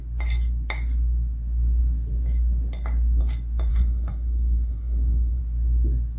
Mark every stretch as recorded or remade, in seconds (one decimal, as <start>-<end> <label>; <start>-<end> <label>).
0.0-3.7 recorded; 3.7-5.4 remade; 5.4-6.2 recorded